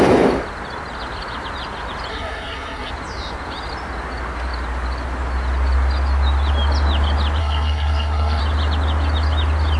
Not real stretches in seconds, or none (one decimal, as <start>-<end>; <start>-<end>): 2.1-2.9; 7.4-8.4